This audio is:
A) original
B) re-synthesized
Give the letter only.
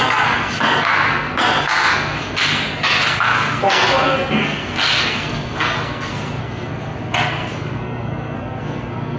B